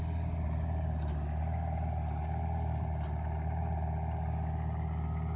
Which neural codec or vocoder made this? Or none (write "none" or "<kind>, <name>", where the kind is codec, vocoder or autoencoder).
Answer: none